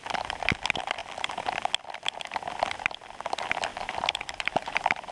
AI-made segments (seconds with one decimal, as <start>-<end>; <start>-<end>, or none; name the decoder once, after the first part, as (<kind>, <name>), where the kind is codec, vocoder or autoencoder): 3.7-5.1 (vocoder, BigVGAN v2)